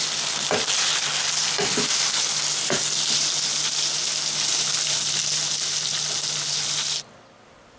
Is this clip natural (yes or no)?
yes